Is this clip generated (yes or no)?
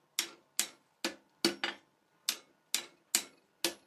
no